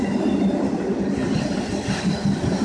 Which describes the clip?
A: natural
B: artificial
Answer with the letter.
B